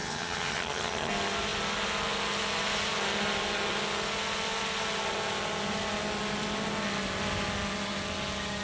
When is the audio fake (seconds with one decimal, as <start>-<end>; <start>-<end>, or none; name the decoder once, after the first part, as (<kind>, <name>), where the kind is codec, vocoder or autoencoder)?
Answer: 0.0-1.1 (vocoder, HiFi-GAN)